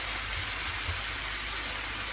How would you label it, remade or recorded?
recorded